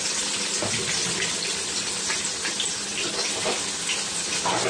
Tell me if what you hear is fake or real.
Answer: real